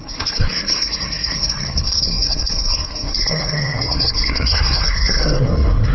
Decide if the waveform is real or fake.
fake